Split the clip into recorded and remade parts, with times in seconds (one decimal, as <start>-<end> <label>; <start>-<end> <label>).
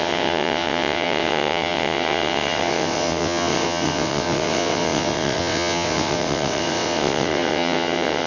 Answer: 0.0-8.3 remade